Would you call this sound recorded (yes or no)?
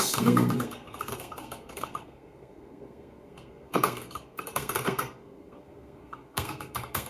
no